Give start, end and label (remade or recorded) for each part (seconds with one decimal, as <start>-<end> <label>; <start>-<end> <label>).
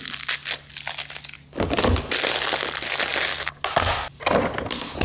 0.0-5.0 recorded